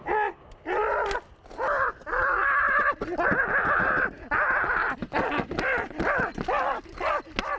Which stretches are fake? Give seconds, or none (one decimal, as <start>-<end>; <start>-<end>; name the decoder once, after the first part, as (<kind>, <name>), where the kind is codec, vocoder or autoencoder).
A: none